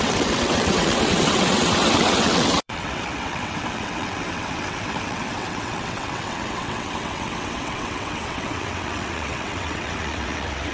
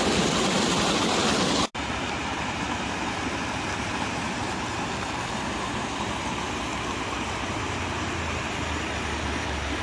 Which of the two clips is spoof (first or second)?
first